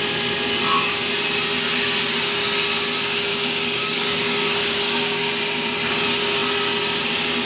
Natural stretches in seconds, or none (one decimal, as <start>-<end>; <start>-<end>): 0.0-3.3; 5.3-7.5